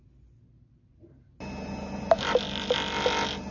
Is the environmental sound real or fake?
real